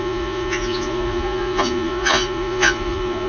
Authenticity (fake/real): fake